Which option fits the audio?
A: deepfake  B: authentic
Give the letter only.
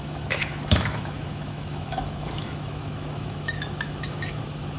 A